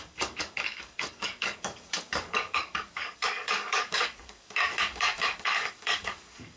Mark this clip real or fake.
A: fake